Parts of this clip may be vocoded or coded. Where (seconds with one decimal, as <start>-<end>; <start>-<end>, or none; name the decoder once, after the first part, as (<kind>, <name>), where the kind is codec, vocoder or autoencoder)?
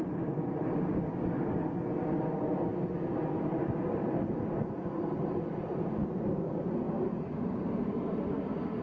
none